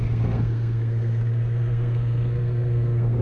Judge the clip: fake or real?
fake